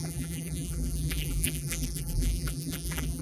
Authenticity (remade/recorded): remade